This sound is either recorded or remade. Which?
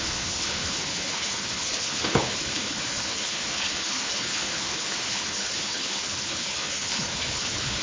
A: remade